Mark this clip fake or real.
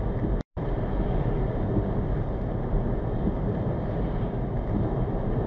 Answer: real